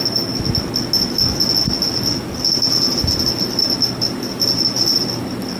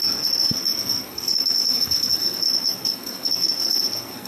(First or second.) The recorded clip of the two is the first